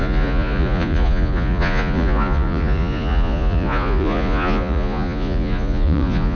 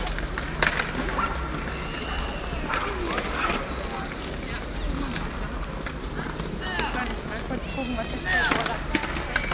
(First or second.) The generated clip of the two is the first